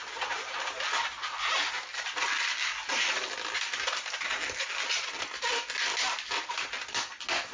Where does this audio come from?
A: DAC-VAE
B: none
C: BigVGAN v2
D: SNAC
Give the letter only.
B